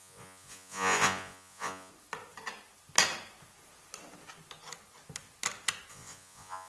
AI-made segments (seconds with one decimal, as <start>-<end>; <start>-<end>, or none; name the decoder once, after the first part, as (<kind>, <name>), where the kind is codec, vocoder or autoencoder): 0.0-1.9 (vocoder, Vocos); 5.9-6.7